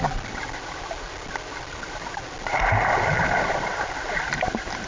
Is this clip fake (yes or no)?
no